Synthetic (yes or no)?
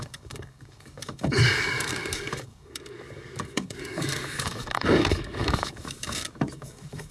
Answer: yes